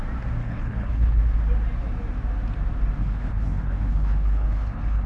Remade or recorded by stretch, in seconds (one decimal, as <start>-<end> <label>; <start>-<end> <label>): 0.0-0.4 recorded; 0.4-1.2 remade; 1.2-3.0 recorded; 3.0-5.1 remade